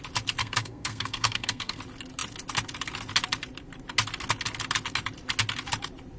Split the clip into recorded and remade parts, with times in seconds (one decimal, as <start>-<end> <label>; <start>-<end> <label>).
0.0-0.4 recorded; 0.4-1.8 remade; 1.8-6.2 recorded